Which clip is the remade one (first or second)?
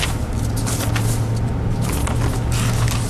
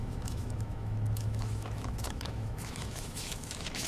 second